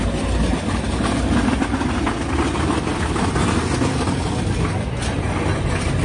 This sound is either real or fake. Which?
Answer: real